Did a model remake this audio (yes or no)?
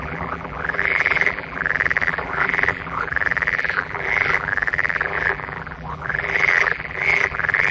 yes